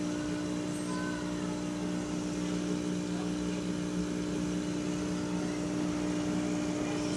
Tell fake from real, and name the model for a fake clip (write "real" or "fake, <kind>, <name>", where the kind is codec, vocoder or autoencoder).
real